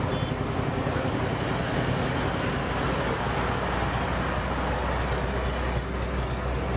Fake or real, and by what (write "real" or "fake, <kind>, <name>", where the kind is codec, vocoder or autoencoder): real